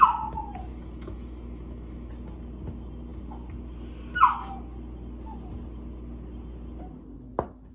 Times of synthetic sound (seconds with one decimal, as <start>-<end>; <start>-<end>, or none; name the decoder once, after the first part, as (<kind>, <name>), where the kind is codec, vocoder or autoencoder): 0.7-2.1 (autoencoder, DAC-VAE)